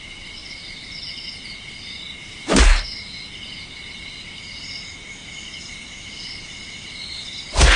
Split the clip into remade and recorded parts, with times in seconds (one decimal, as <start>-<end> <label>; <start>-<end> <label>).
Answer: 0.0-7.8 recorded